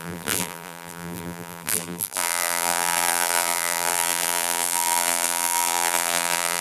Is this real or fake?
fake